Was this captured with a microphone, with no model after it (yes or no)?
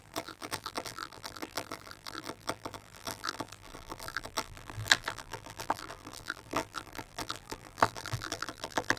no